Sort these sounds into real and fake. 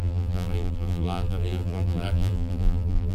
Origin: fake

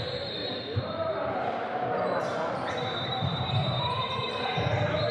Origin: fake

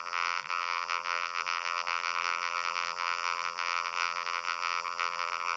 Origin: fake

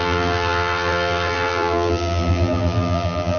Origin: fake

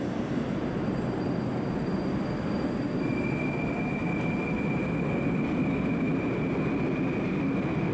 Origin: real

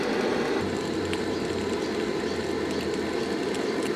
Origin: real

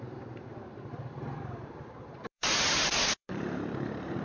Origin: fake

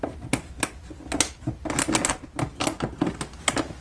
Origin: real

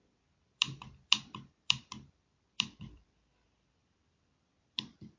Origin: fake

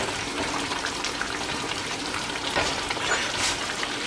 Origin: fake